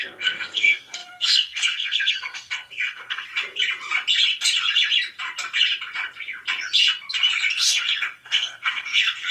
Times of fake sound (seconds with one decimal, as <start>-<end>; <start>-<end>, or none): 0.0-3.3; 7.5-9.3

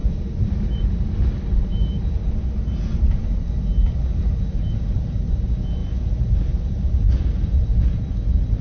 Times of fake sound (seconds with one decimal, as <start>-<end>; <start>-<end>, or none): 0.0-2.2; 5.8-7.5

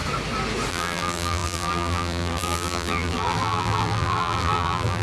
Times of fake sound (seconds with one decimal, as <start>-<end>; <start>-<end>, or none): 0.7-5.0

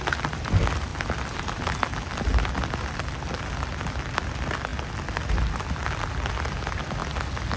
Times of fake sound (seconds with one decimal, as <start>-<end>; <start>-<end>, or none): none

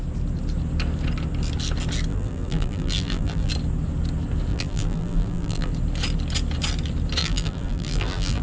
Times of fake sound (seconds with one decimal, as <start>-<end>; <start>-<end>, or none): 2.1-3.5; 4.5-5.7; 7.2-8.4

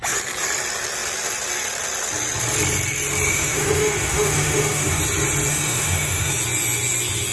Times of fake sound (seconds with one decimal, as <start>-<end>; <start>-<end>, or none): 3.3-5.0; 5.5-6.3

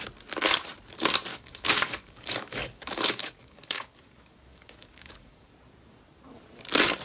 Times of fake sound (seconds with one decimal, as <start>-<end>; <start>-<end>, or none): 1.3-5.5

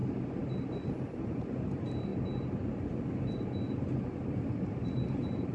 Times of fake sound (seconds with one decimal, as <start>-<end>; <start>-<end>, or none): 0.7-2.1; 4.5-5.5